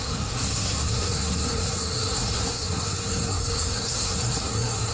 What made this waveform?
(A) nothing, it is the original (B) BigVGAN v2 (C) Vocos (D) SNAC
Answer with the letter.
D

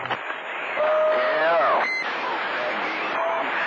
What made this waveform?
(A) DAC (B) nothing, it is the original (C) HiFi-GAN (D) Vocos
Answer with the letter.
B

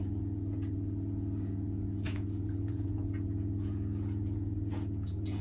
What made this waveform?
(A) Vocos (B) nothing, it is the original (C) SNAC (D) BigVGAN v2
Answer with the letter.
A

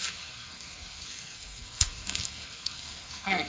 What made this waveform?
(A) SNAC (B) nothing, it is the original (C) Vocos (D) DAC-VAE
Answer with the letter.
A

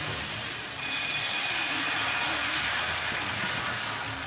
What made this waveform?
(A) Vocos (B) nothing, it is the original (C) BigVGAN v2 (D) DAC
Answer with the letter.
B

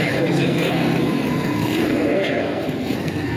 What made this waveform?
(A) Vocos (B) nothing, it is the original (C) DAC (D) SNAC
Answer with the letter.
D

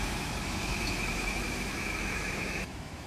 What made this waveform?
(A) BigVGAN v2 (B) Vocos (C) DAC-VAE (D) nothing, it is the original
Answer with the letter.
C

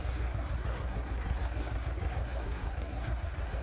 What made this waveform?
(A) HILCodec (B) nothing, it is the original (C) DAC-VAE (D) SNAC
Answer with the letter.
D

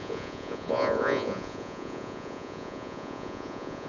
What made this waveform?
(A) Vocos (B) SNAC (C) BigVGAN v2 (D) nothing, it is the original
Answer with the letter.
A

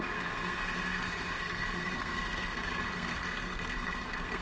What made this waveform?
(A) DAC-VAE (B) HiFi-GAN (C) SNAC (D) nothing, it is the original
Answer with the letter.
C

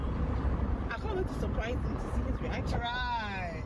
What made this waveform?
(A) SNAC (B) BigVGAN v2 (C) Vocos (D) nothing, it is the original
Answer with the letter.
D